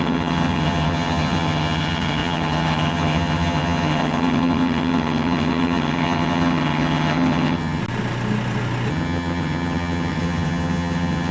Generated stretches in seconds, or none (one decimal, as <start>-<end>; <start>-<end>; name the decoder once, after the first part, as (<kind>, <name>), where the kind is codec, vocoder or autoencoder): 0.0-7.8 (vocoder, HiFi-GAN); 8.9-11.3